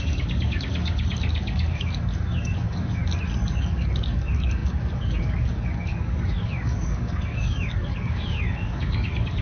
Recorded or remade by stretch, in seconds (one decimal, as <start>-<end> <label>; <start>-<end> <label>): 0.0-3.0 remade; 3.0-3.6 recorded; 3.6-9.4 remade